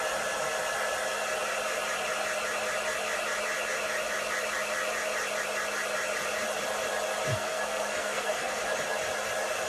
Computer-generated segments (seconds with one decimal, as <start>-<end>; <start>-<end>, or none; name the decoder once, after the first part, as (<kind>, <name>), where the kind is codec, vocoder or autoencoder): 7.3-8.6 (codec, SNAC)